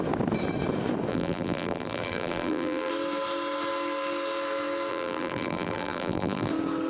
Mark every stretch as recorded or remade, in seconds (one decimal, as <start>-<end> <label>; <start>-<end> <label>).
0.0-1.1 recorded; 1.1-2.9 remade; 2.9-4.9 recorded; 4.9-6.5 remade; 6.5-6.9 recorded